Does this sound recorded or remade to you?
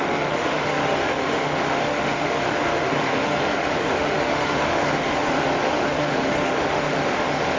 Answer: remade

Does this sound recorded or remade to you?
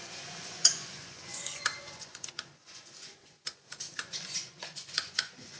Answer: remade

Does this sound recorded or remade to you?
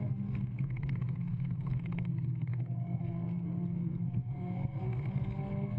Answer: remade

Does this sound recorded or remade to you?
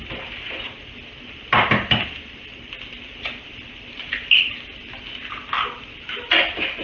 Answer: recorded